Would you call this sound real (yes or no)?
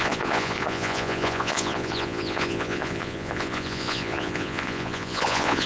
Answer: no